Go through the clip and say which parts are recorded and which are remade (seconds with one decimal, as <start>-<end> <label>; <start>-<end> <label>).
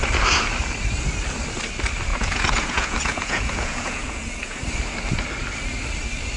0.0-2.1 recorded; 2.1-4.6 remade; 4.6-6.4 recorded